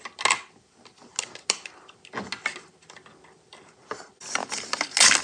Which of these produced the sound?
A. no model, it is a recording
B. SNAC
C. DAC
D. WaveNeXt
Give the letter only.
A